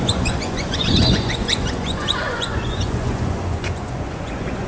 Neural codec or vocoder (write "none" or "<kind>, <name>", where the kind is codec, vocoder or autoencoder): vocoder, Vocos